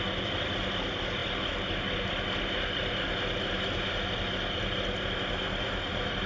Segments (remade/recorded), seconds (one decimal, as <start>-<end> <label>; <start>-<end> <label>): 0.0-6.3 recorded